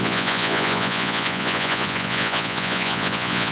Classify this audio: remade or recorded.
remade